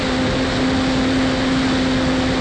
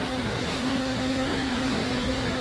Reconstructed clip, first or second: second